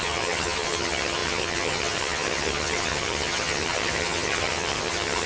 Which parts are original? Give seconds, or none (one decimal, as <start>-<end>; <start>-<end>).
none

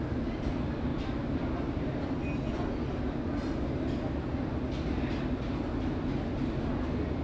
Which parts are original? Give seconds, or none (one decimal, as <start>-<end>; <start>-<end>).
0.0-7.2

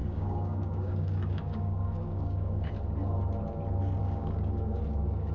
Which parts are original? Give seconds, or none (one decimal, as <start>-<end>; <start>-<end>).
2.7-4.0; 4.8-5.3

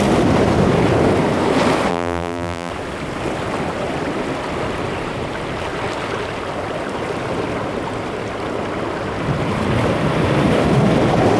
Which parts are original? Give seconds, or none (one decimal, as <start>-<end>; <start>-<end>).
0.0-1.9; 2.7-11.4

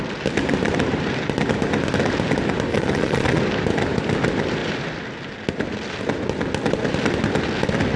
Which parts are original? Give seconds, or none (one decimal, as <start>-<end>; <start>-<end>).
0.0-2.7; 3.4-8.0

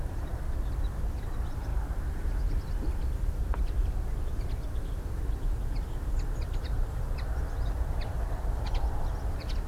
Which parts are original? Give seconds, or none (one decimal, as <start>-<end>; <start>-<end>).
none

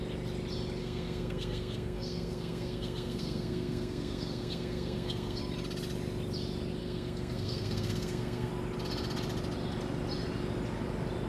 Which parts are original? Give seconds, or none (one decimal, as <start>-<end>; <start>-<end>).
0.0-0.8; 5.4-6.8; 8.5-11.3